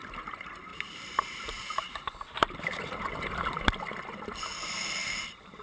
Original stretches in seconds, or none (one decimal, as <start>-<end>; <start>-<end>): 0.0-0.7; 3.1-5.0